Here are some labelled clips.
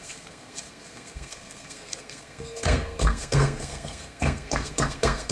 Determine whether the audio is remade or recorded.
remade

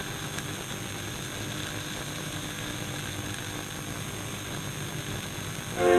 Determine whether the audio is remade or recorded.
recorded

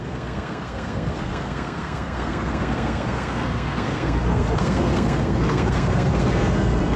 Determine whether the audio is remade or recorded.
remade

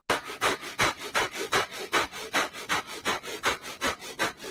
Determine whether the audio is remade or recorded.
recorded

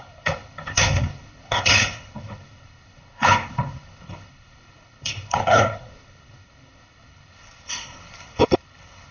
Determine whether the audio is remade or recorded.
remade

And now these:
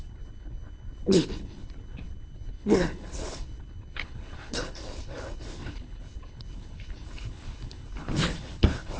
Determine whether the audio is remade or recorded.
remade